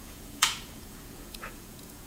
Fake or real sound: fake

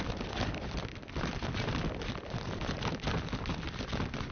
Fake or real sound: real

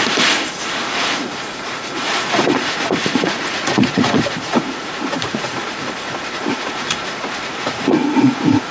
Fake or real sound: fake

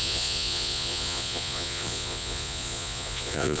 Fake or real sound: fake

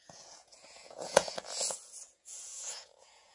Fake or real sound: fake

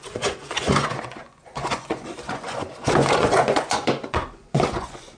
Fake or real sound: fake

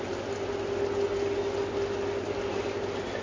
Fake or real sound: real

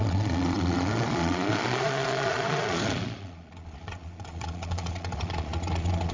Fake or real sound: fake